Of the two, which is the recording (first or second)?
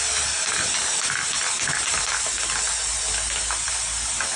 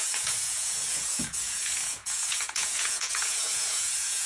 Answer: first